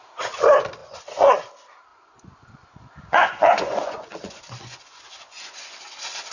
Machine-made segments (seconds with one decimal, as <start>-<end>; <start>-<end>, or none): 0.8-1.5; 1.9-5.7